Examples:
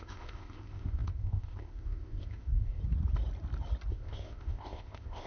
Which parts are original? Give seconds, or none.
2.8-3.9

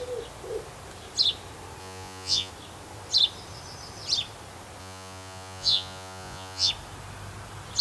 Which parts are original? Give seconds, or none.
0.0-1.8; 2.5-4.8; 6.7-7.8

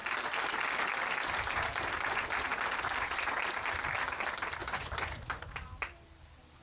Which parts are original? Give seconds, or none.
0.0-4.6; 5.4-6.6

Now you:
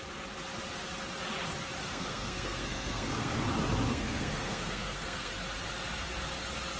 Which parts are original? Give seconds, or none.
0.0-1.8; 3.4-3.9; 5.3-6.8

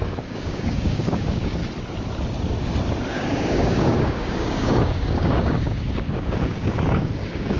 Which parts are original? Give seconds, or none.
1.6-3.1